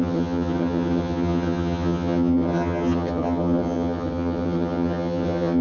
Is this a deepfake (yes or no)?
yes